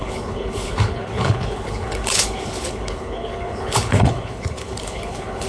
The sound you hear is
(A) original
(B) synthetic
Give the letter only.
B